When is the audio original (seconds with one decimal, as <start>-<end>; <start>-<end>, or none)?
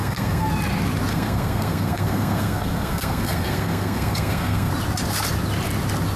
0.5-1.1; 4.7-6.2